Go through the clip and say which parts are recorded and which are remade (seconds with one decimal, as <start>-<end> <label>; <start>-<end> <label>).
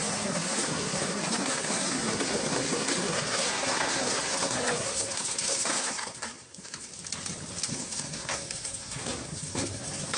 0.0-6.9 remade; 6.9-7.7 recorded; 7.7-10.2 remade